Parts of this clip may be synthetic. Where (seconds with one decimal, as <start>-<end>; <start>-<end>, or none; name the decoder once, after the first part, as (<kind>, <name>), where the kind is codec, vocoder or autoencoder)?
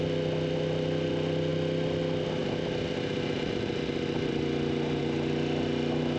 none